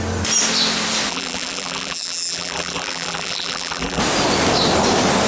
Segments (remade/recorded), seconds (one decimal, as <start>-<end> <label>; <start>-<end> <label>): 0.0-1.1 recorded; 1.1-4.0 remade; 4.0-5.3 recorded